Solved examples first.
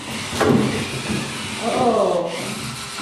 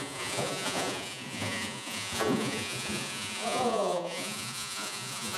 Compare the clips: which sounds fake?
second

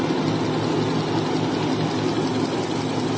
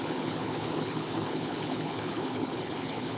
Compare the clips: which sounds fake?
second